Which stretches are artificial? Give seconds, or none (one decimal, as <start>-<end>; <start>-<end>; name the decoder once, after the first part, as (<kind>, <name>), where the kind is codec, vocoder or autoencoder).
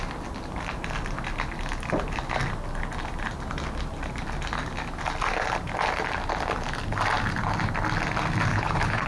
8.5-9.1 (codec, HILCodec)